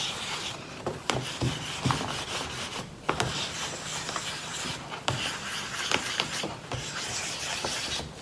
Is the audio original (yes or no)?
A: no